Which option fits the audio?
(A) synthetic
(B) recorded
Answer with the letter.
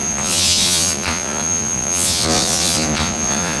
A